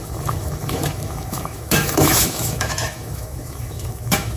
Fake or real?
fake